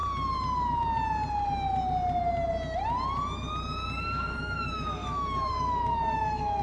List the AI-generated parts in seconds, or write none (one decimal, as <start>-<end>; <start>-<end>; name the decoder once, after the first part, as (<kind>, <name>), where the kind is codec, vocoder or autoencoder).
4.0-6.6 (autoencoder, DAC-VAE)